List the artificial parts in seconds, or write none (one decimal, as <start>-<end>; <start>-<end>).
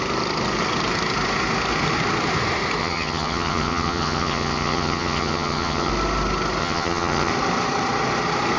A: 2.8-5.9; 6.6-7.3